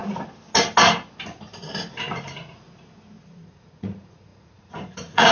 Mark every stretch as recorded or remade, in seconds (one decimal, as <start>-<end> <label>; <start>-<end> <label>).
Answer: 0.0-3.2 recorded; 3.2-5.3 remade